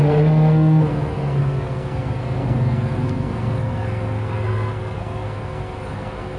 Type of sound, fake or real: fake